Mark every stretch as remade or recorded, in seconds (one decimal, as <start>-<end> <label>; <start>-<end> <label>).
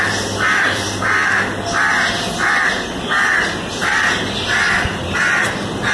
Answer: 0.0-5.9 recorded